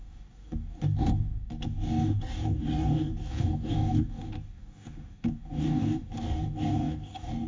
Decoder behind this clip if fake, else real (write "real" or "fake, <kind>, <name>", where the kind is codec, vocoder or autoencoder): fake, codec, DAC